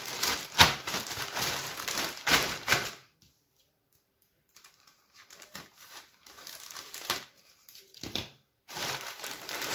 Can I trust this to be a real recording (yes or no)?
no